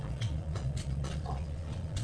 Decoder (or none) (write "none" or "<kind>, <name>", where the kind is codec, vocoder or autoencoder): vocoder, Vocos